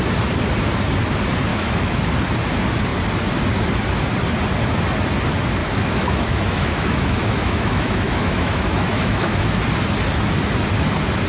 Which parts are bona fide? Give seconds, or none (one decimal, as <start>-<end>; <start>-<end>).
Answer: 0.0-1.5; 2.0-5.6; 9.6-11.3